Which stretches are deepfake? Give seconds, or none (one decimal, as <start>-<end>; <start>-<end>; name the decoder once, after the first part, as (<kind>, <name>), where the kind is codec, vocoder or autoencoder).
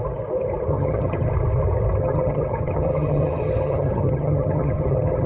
0.7-1.3 (vocoder, HiFi-GAN); 2.0-5.3